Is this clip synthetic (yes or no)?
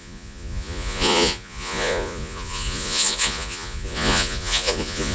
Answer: yes